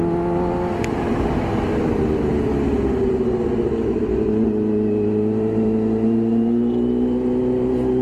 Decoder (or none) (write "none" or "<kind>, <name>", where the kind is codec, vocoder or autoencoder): none